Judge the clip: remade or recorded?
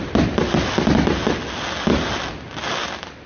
recorded